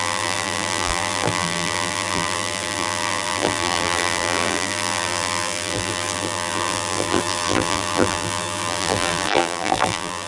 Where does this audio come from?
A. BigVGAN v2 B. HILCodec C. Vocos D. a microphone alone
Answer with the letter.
A